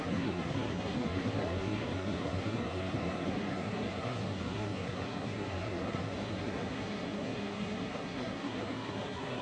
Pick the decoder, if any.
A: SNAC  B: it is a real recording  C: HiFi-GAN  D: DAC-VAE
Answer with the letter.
A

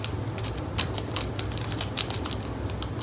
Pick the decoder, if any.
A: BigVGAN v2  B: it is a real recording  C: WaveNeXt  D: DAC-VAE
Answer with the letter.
B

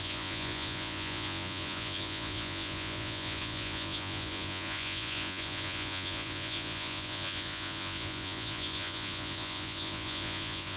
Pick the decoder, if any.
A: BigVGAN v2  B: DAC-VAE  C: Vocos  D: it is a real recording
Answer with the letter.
C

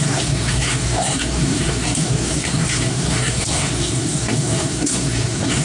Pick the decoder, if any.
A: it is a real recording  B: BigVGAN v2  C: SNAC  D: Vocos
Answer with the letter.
C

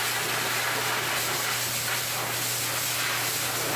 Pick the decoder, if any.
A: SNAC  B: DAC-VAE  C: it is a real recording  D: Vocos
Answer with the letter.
C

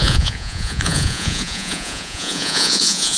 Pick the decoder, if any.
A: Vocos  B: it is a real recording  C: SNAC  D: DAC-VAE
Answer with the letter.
A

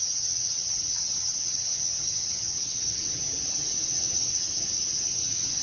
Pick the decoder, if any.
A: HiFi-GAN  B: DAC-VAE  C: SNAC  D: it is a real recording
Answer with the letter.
A